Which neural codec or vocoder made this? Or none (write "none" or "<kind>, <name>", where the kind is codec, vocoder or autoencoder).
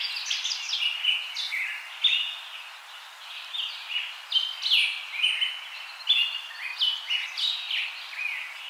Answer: none